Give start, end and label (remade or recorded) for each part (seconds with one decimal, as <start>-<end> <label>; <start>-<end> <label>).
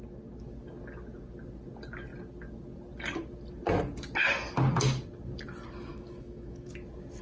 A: 0.0-5.9 recorded; 5.9-6.7 remade; 6.7-7.2 recorded